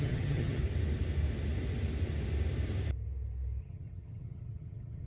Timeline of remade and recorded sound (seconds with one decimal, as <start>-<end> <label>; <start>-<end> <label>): 0.0-0.6 remade; 0.6-3.6 recorded; 3.6-5.1 remade